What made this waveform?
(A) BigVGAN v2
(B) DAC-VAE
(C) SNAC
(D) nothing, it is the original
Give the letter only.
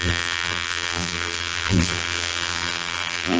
A